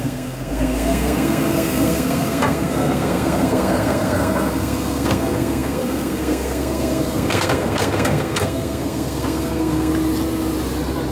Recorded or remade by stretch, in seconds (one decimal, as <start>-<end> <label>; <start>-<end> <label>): 0.0-9.9 remade; 9.9-11.1 recorded